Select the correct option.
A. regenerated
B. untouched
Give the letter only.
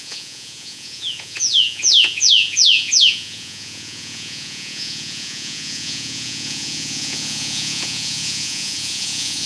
A